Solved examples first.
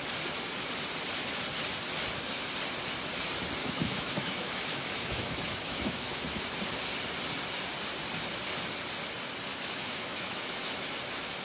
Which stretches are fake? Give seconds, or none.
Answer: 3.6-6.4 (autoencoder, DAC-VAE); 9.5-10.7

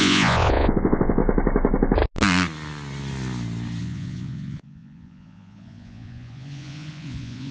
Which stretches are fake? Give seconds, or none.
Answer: 0.0-1.2 (vocoder, Vocos); 3.8-7.5

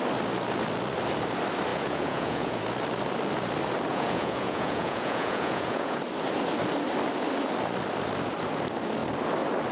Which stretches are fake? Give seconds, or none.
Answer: 1.7-2.6 (vocoder, Vocos); 3.9-6.0

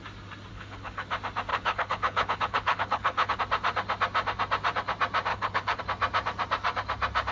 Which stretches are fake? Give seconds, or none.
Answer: 0.5-1.1 (codec, HILCodec); 1.5-3.4; 5.3-5.8

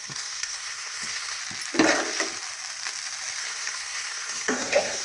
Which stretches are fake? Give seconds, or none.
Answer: 0.0-1.4 (codec, SNAC); 3.4-5.0